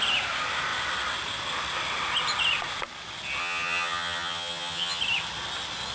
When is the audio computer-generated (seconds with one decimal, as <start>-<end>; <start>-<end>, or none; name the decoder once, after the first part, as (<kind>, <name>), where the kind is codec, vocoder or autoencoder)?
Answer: 3.4-5.0 (vocoder, HiFi-GAN)